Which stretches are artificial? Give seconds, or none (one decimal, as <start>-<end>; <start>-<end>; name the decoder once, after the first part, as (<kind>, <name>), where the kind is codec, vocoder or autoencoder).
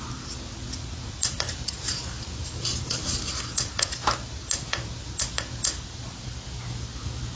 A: 1.2-1.9 (vocoder, BigVGAN v2)